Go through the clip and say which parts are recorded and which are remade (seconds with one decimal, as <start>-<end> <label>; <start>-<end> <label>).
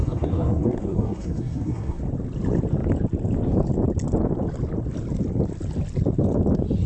0.0-2.0 remade; 2.0-6.9 recorded